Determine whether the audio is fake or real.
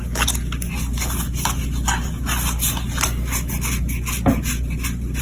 real